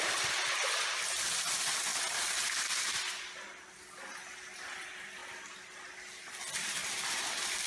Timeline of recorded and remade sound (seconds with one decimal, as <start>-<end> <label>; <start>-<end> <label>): 0.0-7.7 recorded